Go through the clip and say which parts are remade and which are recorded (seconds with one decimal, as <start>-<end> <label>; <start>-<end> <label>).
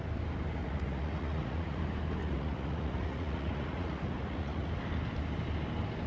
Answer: 0.0-0.6 recorded; 0.6-1.8 remade; 1.8-2.2 recorded; 2.2-4.7 remade; 4.7-6.1 recorded